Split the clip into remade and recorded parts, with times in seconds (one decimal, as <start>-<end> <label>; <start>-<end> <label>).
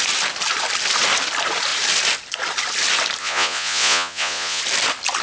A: 0.0-3.2 recorded; 3.2-4.6 remade; 4.6-5.2 recorded